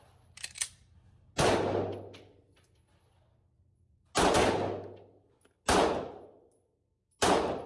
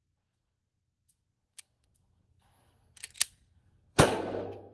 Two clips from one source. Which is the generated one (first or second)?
second